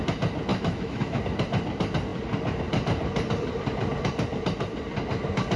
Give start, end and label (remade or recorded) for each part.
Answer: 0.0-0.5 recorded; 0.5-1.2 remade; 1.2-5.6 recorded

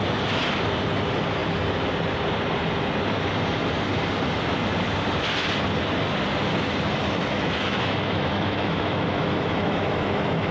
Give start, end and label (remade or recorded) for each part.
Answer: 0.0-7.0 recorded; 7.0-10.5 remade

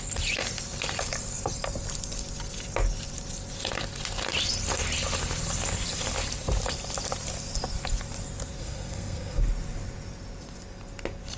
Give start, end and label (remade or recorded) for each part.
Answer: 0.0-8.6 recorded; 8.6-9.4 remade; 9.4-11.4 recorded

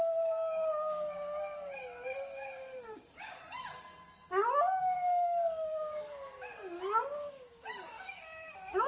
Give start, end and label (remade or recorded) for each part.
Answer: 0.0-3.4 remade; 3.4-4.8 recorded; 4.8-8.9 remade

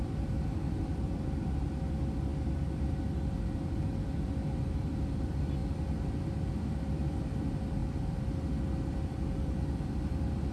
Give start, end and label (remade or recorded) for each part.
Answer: 0.0-10.5 remade